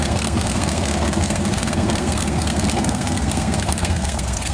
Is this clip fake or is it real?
fake